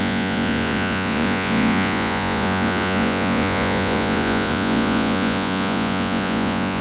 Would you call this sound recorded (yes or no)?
no